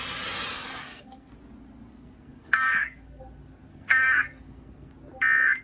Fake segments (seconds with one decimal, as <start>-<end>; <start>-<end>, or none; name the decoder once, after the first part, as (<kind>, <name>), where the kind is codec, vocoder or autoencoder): 0.8-1.3 (codec, SNAC); 1.9-3.2; 3.7-4.9